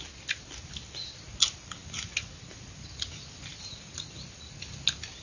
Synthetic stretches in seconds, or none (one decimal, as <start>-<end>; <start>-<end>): none